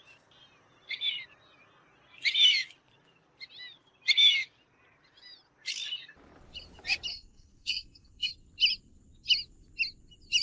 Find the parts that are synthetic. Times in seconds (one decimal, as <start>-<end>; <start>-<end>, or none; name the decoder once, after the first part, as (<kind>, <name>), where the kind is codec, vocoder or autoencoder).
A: 7.1-8.3 (codec, SNAC)